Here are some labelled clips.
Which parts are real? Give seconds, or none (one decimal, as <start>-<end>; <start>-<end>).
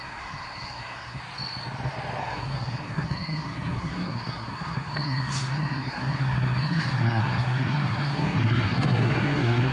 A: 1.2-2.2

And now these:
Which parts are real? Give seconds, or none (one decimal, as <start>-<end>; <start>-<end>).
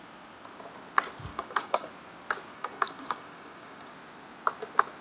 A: 0.0-1.3; 1.9-2.5; 3.9-5.0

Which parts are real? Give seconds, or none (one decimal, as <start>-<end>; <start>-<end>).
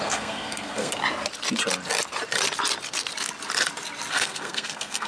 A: 1.0-4.1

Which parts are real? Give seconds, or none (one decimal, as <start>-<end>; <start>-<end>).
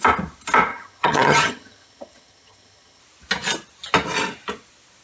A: 0.0-0.7; 3.0-5.0